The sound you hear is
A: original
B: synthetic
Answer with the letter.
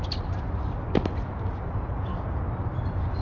A